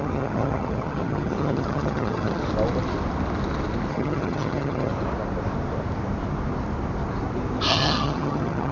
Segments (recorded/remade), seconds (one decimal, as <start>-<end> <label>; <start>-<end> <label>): 0.0-2.4 remade; 2.4-3.9 recorded; 3.9-4.9 remade; 4.9-7.7 recorded; 7.7-8.7 remade